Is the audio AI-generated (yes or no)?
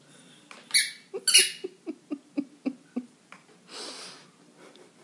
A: no